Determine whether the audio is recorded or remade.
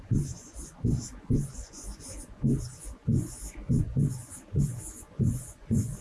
remade